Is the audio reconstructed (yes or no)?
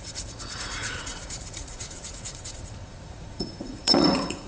yes